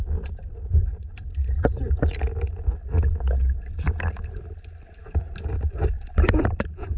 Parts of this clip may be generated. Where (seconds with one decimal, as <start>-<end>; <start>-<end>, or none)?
none